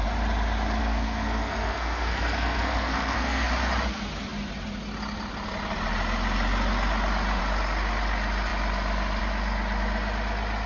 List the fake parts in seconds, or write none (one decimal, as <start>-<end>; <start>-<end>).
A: 0.8-3.5